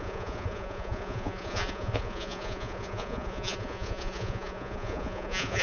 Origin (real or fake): fake